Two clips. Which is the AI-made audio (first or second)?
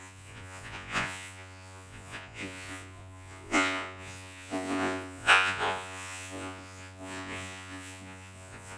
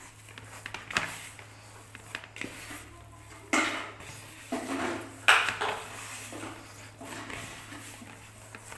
first